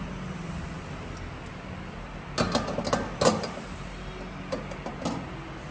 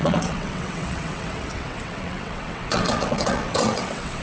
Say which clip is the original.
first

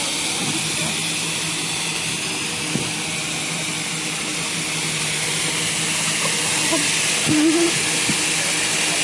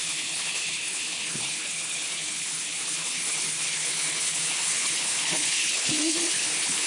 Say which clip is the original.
first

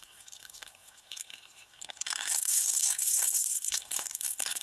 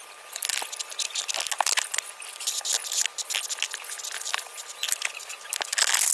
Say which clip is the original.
second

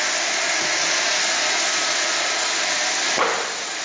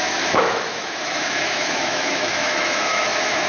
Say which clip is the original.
first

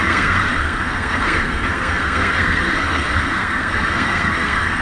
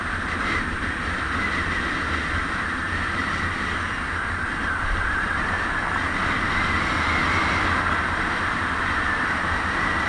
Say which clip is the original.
second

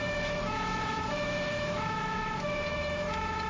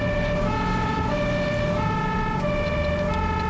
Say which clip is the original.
second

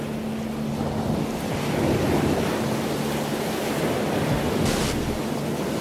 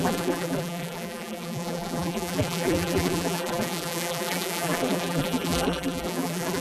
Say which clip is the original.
first